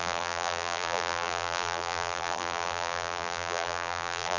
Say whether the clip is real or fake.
fake